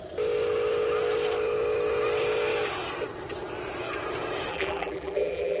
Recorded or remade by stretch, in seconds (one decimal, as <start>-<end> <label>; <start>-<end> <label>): 0.0-4.5 recorded; 4.5-5.6 remade